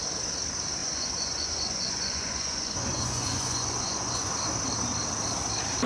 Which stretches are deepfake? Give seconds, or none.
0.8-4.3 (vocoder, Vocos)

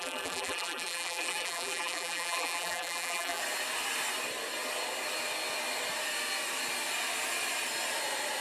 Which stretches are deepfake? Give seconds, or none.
0.0-3.4 (vocoder, BigVGAN v2)